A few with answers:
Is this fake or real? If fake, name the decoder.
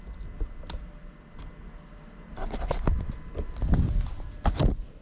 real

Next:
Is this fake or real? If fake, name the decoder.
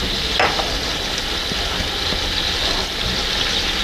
real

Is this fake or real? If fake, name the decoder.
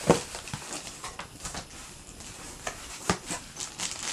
real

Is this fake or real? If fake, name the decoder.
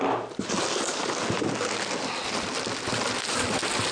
real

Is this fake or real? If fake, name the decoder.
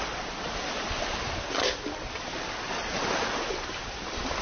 real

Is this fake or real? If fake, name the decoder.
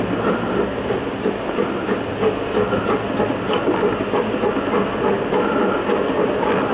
real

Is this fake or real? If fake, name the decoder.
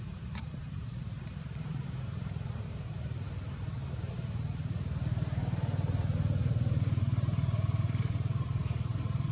fake, vocoder, BigVGAN v2